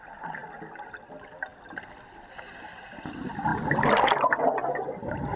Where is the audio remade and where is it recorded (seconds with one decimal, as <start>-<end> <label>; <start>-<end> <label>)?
0.0-0.4 recorded; 0.4-1.1 remade; 1.1-5.4 recorded